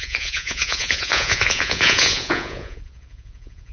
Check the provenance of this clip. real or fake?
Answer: fake